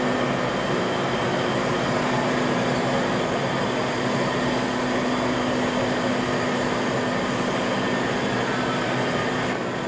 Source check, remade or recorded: recorded